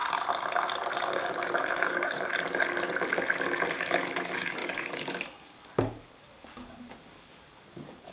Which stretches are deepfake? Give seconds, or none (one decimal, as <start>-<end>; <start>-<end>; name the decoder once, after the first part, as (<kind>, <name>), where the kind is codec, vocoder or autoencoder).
1.6-2.3 (codec, DAC); 3.9-8.1